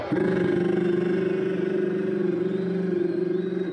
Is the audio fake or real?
real